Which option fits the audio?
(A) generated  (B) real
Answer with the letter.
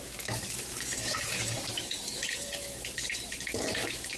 A